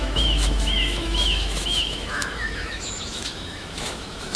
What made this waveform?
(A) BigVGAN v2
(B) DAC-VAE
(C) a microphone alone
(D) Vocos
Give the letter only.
B